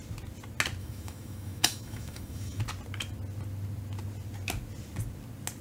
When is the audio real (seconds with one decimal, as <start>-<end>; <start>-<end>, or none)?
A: 0.0-0.8; 2.6-5.6